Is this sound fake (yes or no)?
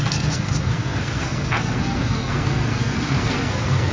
yes